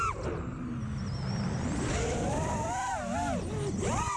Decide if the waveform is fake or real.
real